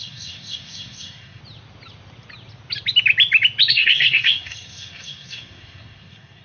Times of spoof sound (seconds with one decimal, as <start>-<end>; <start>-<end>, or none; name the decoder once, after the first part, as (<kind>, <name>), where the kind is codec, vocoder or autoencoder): 0.0-1.4 (codec, SNAC); 3.7-6.4